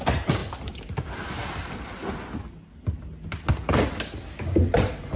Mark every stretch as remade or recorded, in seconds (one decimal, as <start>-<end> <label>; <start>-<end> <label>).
0.0-5.2 recorded